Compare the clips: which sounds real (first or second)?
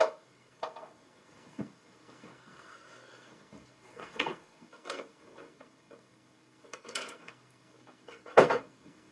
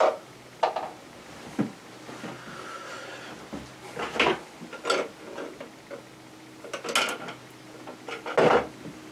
second